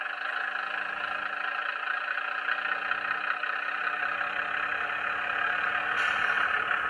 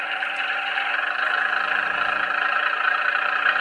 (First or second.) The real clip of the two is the first